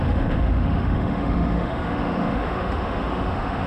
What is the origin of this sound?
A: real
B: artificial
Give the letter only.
B